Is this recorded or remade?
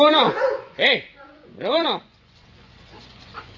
remade